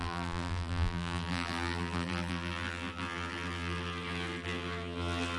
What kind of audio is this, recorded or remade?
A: remade